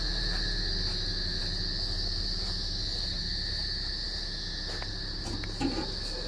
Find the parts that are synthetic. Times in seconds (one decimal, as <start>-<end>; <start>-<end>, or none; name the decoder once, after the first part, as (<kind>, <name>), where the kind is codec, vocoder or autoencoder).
none